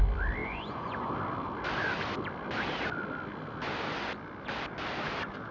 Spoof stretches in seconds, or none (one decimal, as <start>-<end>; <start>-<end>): 0.4-1.1